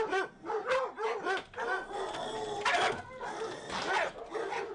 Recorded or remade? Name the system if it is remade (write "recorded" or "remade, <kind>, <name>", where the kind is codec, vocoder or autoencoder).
recorded